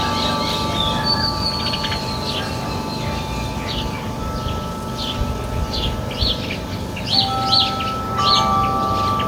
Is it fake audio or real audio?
real